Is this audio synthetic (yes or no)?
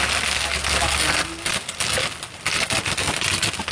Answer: no